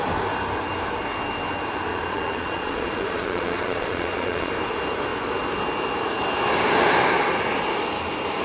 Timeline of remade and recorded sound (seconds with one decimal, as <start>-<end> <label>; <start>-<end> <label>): 0.0-1.9 recorded; 1.9-4.5 remade; 4.5-8.4 recorded

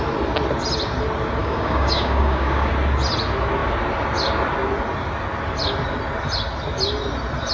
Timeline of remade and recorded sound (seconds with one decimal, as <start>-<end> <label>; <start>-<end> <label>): 0.0-1.4 recorded; 1.4-2.7 remade; 2.7-7.5 recorded

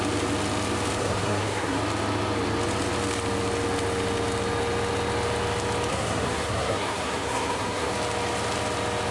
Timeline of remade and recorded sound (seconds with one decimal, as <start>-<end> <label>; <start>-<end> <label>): 0.0-1.0 recorded; 1.0-1.8 remade; 1.8-5.9 recorded; 5.9-7.9 remade; 7.9-9.1 recorded

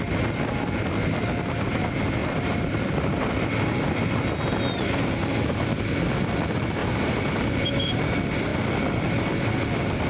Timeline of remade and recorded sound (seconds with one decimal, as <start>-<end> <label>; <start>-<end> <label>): 0.0-2.2 recorded; 2.2-3.5 remade; 3.5-6.8 recorded; 6.8-8.0 remade; 8.0-10.1 recorded

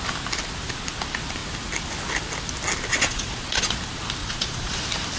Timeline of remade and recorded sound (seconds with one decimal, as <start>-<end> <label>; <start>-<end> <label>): 0.0-2.9 recorded; 2.9-3.7 remade; 3.7-4.2 recorded; 4.2-4.7 remade; 4.7-5.2 recorded

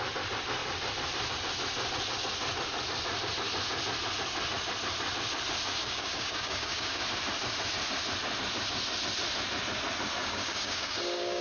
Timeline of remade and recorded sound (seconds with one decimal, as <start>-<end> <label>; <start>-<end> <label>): 0.0-5.8 recorded; 5.8-7.0 remade; 7.0-10.2 recorded; 10.2-11.4 remade

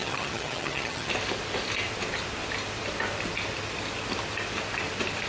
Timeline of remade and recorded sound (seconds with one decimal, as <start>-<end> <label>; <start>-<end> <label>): 0.0-1.1 remade; 1.1-5.3 recorded

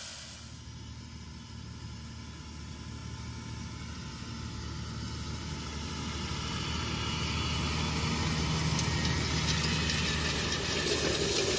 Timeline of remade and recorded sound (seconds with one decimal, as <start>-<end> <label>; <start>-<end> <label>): 0.0-11.6 recorded